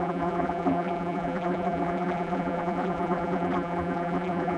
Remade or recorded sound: remade